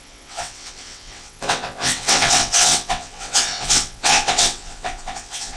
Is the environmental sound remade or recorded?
remade